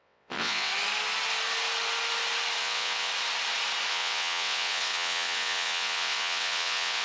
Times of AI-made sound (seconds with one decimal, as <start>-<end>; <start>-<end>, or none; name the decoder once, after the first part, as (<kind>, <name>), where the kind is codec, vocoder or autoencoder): 0.0-0.7 (vocoder, WaveNeXt); 2.6-3.1; 3.9-7.0